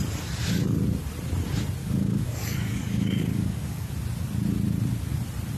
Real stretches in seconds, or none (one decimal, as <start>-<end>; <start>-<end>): 0.0-1.8; 3.9-5.6